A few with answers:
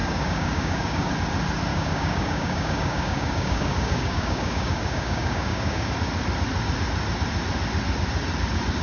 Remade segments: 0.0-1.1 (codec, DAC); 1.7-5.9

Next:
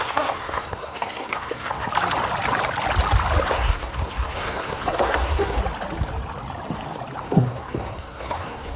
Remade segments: 0.0-1.9 (codec, SNAC); 3.5-5.6; 7.2-8.8

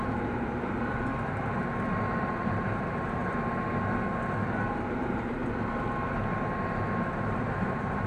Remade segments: 0.0-1.1 (vocoder, BigVGAN v2); 2.3-3.2; 4.7-5.4; 7.1-8.1